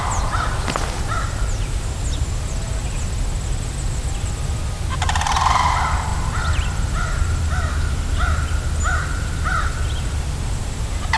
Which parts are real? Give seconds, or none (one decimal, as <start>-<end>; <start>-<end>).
0.0-6.1; 7.4-11.2